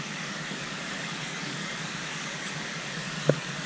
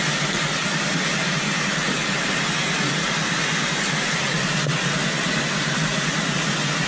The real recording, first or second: second